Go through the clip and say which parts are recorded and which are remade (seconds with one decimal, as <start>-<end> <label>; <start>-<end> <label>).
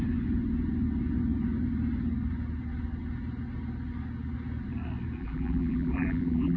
0.0-5.2 recorded; 5.2-6.6 remade